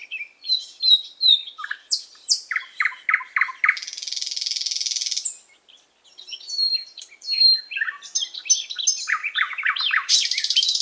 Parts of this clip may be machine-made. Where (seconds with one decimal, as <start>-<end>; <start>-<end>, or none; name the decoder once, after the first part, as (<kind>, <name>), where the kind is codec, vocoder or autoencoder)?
6.7-7.6 (vocoder, BigVGAN v2); 8.9-10.8